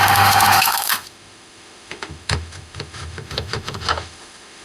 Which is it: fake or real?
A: fake